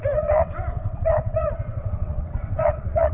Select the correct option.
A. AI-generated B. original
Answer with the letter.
A